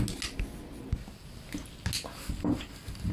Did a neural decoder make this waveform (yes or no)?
no